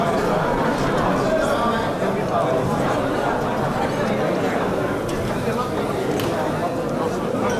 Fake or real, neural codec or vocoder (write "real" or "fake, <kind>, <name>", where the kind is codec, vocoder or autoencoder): real